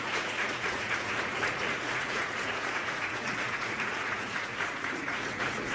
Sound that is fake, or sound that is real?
fake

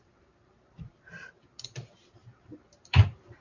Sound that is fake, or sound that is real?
fake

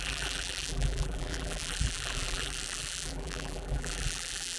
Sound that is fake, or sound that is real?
fake